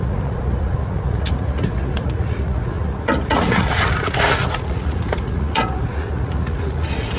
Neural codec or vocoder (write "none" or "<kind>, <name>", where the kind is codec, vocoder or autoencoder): vocoder, Vocos